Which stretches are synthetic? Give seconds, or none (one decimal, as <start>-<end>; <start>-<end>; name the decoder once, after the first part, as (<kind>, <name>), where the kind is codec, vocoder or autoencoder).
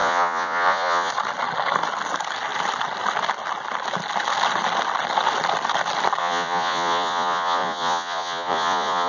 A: 0.0-1.1 (vocoder, Vocos); 6.2-9.1